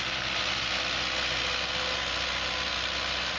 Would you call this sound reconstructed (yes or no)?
no